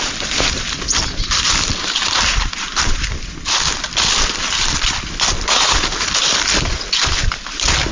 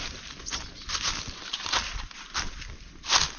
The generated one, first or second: first